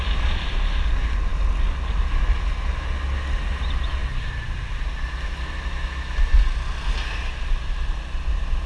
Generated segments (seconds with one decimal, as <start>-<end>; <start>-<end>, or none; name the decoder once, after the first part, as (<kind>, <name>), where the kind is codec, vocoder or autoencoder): none